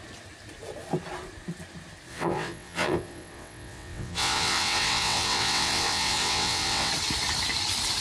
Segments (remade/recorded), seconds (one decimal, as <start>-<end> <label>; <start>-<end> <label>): 0.0-2.1 recorded; 2.1-6.9 remade; 6.9-8.0 recorded